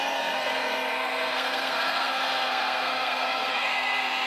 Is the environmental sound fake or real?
fake